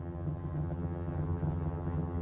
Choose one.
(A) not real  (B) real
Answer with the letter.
A